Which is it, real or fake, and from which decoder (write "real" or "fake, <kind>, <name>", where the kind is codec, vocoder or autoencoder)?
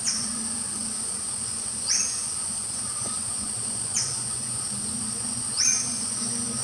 fake, vocoder, Vocos